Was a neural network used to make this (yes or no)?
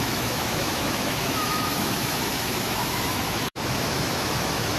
yes